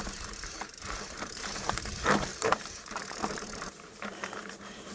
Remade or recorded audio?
remade